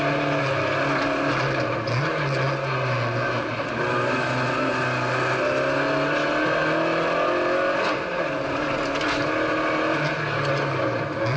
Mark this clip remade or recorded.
recorded